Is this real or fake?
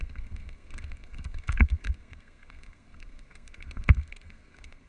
fake